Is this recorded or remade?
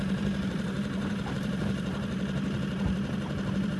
remade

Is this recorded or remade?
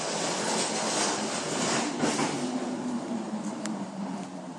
remade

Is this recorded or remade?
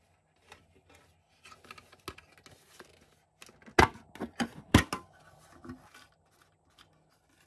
recorded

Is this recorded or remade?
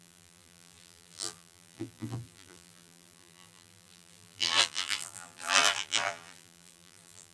remade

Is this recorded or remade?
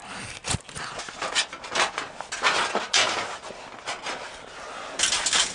recorded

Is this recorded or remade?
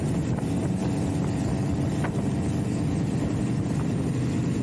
recorded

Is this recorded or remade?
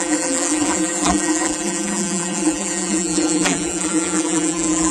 remade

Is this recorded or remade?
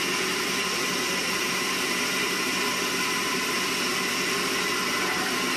recorded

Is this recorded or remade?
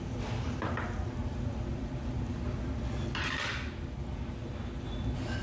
recorded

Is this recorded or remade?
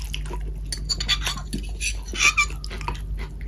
recorded